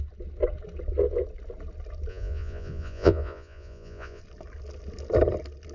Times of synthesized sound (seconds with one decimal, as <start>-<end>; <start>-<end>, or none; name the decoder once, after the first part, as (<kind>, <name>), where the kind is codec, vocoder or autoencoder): 2.1-4.2 (vocoder, Vocos)